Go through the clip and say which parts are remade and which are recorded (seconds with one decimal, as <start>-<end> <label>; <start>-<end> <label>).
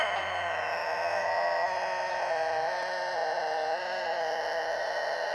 0.0-0.8 remade; 0.8-2.1 recorded; 2.1-5.3 remade